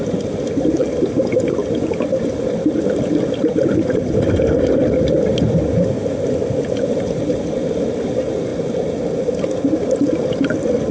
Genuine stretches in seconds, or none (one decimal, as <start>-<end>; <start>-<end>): 0.0-10.9